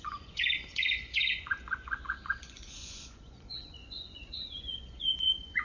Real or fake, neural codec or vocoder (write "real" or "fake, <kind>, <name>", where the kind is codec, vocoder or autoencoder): fake, vocoder, Vocos